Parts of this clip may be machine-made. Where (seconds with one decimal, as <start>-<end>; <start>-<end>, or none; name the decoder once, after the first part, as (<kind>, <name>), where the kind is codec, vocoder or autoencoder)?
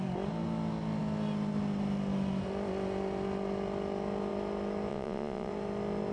4.9-5.5 (vocoder, Vocos)